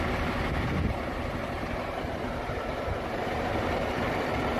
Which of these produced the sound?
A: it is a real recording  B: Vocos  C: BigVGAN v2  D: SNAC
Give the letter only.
A